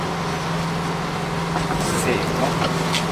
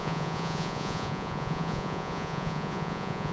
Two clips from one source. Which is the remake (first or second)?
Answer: second